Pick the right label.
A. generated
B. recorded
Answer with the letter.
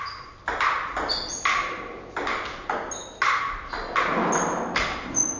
B